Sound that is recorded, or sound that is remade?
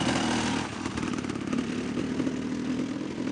recorded